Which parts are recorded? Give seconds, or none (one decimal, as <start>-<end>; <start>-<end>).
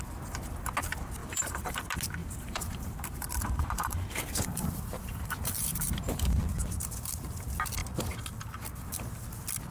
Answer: 0.0-1.2; 1.8-2.2; 6.4-9.7